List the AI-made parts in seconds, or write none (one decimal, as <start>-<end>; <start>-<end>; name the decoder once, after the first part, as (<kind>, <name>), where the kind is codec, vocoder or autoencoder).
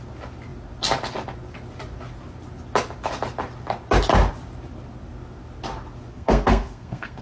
6.1-7.2 (codec, SNAC)